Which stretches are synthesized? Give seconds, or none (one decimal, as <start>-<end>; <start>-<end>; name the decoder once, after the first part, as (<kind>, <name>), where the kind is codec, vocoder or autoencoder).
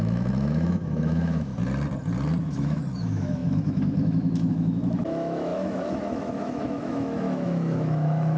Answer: 0.0-1.5 (autoencoder, DAC-VAE); 2.4-8.4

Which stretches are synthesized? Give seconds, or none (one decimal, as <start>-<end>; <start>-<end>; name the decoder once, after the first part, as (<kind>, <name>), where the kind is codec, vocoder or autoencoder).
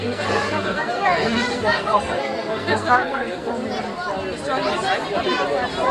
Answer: 0.0-3.5 (codec, SNAC)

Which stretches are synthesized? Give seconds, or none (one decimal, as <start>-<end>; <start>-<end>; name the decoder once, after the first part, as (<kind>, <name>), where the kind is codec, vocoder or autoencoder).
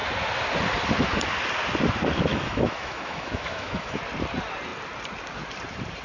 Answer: 2.3-4.0 (autoencoder, DAC-VAE)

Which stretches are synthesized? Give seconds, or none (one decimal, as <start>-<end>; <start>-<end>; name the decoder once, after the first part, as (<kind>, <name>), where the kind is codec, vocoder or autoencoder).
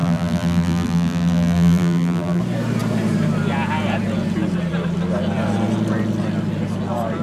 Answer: 0.0-2.4 (vocoder, BigVGAN v2)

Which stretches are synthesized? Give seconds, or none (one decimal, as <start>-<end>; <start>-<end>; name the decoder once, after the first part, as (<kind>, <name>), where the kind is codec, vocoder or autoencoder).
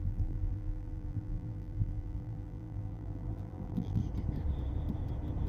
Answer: 0.0-4.0 (vocoder, BigVGAN v2)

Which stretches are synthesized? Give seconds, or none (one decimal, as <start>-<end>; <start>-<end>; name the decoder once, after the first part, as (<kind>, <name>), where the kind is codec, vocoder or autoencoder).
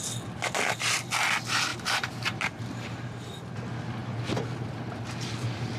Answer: 1.7-3.4 (vocoder, BigVGAN v2)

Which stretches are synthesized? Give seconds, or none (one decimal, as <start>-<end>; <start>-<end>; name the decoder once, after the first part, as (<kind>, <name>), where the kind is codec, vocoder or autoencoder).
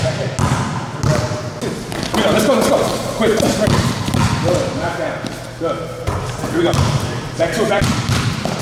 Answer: none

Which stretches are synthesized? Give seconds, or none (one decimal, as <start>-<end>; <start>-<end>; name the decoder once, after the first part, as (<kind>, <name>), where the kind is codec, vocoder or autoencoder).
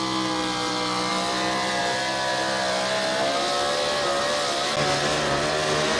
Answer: none